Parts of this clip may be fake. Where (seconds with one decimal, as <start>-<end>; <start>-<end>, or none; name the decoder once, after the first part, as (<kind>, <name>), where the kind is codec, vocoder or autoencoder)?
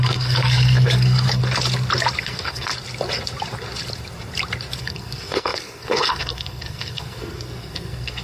0.0-1.4 (codec, SNAC); 2.2-2.7; 4.8-8.2